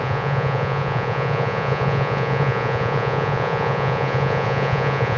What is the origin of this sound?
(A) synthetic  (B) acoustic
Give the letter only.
A